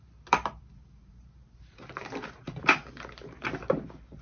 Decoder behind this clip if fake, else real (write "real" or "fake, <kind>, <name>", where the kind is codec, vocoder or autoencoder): fake, vocoder, BigVGAN v2